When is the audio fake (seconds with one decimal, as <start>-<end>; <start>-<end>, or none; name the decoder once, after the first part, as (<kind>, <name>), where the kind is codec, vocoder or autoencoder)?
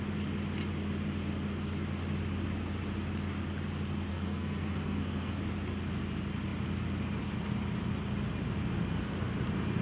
4.1-5.4 (codec, SNAC)